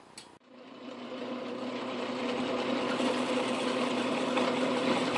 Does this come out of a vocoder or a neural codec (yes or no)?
yes